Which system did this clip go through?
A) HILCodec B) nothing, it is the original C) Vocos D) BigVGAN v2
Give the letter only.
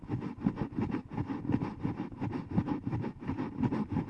B